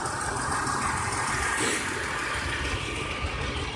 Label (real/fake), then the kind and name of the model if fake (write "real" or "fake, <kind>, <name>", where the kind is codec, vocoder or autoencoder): real